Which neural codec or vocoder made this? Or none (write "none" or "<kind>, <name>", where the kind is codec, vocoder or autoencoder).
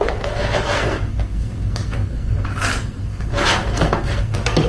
codec, SNAC